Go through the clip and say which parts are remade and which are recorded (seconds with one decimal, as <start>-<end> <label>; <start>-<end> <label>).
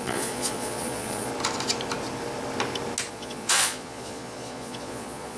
0.0-1.3 remade; 1.3-3.1 recorded; 3.1-5.4 remade